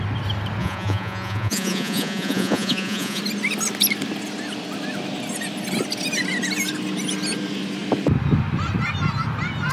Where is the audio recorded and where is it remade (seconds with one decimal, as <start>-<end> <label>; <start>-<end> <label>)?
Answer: 0.0-0.6 recorded; 0.6-3.2 remade; 3.2-9.7 recorded